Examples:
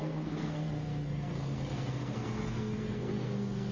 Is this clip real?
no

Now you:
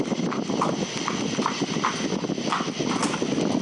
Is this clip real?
yes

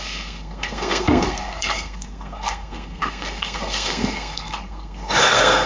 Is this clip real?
no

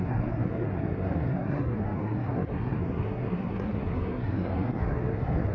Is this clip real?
no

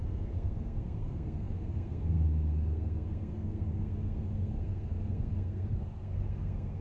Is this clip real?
no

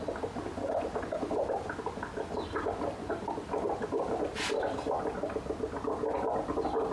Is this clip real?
yes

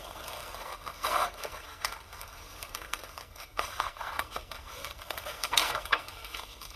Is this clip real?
no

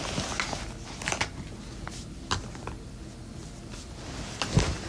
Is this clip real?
yes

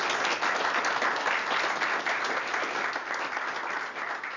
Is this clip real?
yes